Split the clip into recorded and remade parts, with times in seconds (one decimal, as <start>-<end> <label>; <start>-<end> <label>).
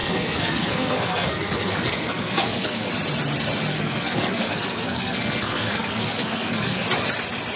0.0-2.9 remade; 2.9-3.7 recorded; 3.7-6.8 remade; 6.8-7.6 recorded